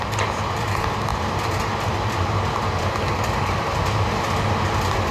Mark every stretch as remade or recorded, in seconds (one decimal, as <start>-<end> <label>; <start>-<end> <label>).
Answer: 0.0-5.1 recorded